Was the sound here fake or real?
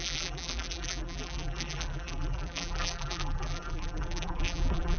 fake